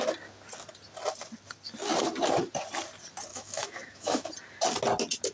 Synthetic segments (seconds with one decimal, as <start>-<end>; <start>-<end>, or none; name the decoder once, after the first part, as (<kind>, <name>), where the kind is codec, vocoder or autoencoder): 3.3-4.3 (autoencoder, DAC-VAE)